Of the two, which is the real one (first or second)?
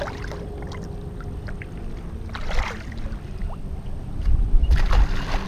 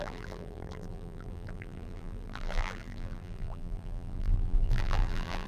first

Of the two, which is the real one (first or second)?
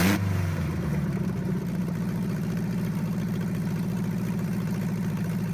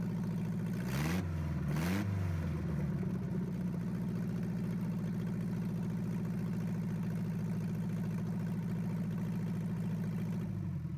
second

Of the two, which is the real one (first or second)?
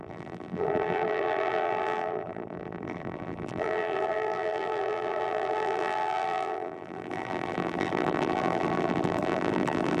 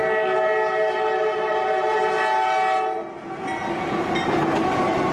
second